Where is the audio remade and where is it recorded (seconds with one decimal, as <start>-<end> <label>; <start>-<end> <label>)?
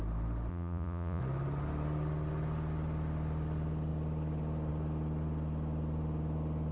0.0-0.5 recorded; 0.5-1.2 remade; 1.2-6.7 recorded